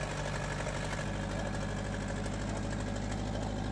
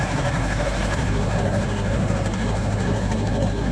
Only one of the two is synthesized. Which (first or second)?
second